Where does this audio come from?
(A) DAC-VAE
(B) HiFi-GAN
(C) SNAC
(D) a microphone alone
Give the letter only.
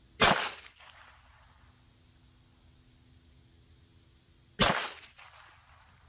D